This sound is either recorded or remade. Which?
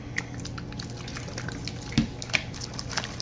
recorded